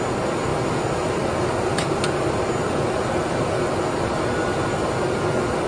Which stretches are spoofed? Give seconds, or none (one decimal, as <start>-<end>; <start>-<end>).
none